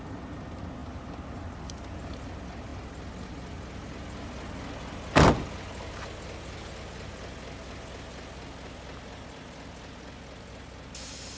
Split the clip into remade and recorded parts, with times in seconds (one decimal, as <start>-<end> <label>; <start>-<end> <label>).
0.0-11.4 recorded